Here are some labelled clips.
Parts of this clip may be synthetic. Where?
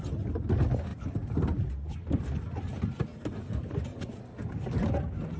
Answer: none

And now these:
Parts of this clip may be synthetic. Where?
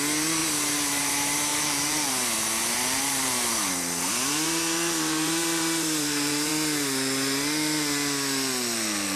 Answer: 0.4-1.1 (vocoder, BigVGAN v2); 1.5-2.1; 2.6-6.5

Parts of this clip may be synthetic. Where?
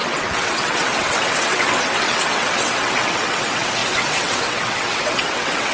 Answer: 0.0-5.7 (vocoder, WaveNeXt)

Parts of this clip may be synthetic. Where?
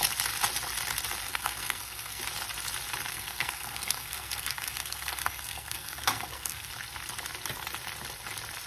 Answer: 1.3-2.2 (codec, SNAC); 3.1-6.7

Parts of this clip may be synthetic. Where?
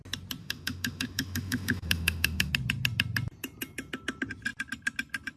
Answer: 0.4-2.5 (autoencoder, DAC-VAE)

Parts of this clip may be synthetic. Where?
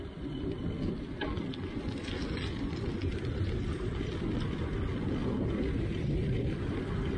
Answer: none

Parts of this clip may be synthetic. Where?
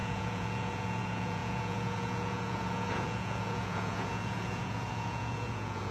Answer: 0.0-5.9 (vocoder, Vocos)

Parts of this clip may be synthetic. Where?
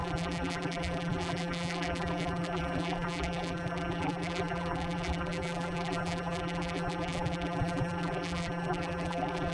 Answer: 0.0-9.5 (vocoder, BigVGAN v2)